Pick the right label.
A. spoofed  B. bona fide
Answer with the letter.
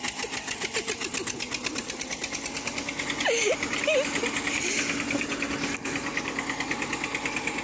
B